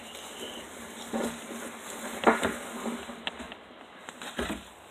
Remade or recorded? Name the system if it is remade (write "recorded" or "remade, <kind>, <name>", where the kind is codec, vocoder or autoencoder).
recorded